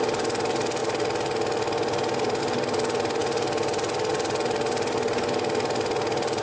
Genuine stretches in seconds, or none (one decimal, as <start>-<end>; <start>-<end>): 0.0-6.4